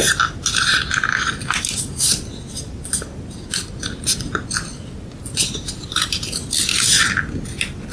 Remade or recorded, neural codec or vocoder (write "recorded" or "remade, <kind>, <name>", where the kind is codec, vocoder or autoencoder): recorded